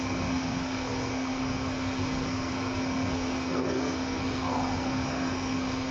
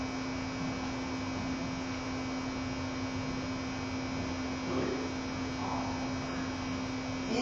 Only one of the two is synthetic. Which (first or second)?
first